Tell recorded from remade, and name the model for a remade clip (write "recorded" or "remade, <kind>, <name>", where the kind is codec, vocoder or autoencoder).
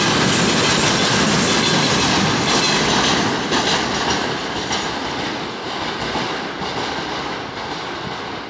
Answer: recorded